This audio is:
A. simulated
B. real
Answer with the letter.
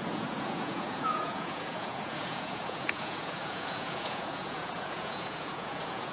A